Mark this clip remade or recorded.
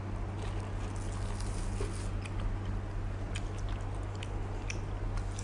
recorded